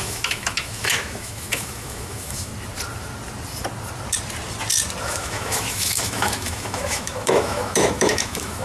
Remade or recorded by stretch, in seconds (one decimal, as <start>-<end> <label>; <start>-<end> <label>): 0.0-2.5 remade; 2.5-5.0 recorded; 5.0-8.6 remade